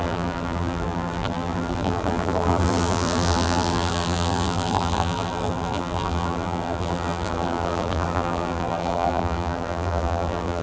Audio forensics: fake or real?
fake